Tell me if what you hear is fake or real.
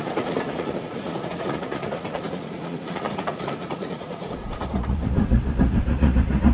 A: fake